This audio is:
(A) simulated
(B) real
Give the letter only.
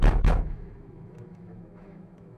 A